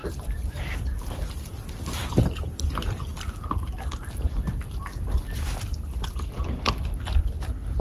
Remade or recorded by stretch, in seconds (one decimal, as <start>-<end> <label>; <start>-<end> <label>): 0.0-7.8 recorded